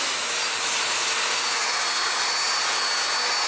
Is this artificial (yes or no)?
no